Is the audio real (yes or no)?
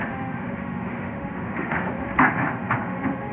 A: no